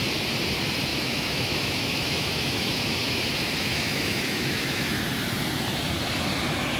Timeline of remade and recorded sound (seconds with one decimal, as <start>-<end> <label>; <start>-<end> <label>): 0.0-0.9 recorded; 0.9-3.2 remade; 3.2-3.6 recorded; 3.6-5.0 remade; 5.0-6.8 recorded

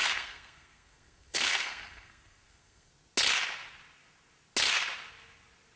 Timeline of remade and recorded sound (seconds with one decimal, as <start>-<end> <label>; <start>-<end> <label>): 0.0-2.9 remade; 2.9-5.8 recorded